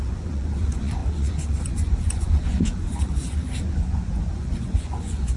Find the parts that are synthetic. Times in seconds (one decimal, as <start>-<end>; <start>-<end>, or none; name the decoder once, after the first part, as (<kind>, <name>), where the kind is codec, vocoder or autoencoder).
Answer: 0.0-5.4 (vocoder, Vocos)